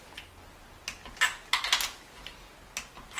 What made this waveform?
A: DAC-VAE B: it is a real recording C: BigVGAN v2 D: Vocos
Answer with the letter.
B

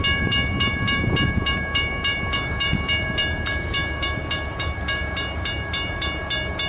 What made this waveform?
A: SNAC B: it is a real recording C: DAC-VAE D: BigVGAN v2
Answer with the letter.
D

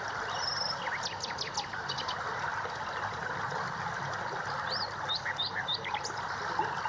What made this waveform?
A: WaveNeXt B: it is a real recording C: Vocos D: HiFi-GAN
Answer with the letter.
B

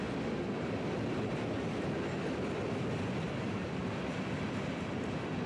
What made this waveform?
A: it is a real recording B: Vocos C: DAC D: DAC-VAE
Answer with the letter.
A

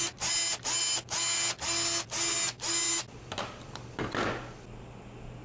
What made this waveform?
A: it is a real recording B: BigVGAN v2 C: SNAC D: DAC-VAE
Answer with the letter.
A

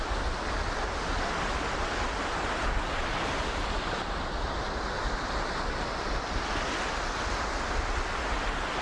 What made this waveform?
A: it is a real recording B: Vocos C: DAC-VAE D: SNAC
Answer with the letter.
A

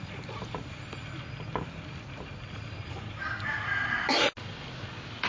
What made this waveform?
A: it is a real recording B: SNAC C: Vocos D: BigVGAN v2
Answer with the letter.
A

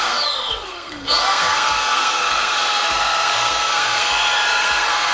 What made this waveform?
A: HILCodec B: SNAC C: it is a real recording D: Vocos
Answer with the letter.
B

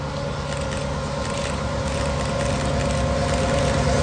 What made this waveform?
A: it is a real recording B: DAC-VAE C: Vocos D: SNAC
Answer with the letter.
A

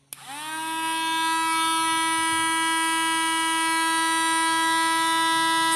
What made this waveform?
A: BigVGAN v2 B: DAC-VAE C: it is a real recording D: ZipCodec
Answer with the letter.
C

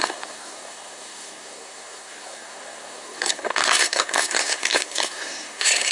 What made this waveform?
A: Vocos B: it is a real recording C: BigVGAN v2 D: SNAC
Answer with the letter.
D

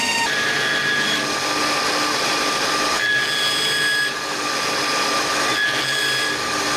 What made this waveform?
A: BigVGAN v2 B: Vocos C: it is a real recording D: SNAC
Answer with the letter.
C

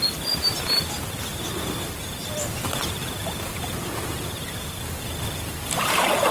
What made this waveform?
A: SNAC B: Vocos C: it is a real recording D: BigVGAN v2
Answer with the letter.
D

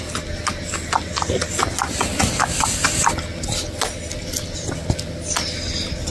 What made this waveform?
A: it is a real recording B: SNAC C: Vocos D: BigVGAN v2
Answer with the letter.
A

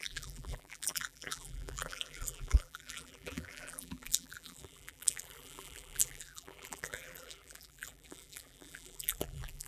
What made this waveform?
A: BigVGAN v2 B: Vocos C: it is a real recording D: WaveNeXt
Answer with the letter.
A